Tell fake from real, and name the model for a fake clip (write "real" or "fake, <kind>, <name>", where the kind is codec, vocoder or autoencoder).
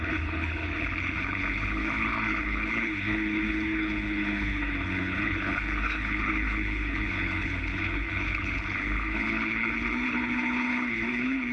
fake, codec, HILCodec